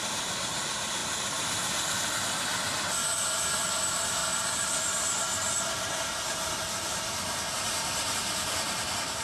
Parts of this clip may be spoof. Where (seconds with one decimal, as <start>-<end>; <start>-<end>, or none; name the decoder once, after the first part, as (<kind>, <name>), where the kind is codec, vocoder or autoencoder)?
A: 0.0-1.0 (vocoder, BigVGAN v2); 3.8-4.2; 7.5-9.2